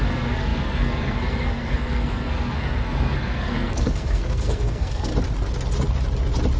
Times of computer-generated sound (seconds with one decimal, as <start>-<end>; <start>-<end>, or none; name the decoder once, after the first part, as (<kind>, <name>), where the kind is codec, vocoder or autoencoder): 0.0-5.1 (codec, SNAC)